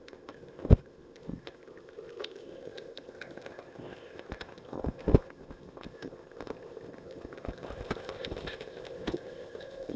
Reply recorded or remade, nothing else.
remade